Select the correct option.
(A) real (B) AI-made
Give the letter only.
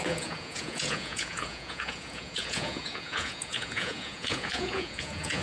B